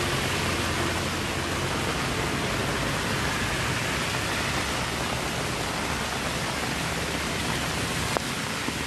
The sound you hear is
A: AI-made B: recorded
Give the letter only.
B